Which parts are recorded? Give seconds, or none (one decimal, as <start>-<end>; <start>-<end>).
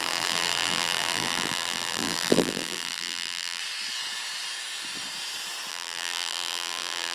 3.6-5.7